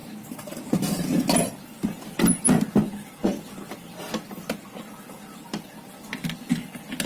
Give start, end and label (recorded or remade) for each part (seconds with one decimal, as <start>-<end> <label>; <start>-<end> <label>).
0.0-7.1 recorded